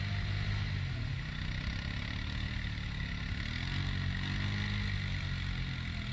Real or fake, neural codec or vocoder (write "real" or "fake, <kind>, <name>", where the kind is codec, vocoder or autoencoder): real